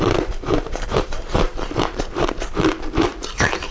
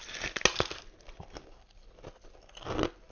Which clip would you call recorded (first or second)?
second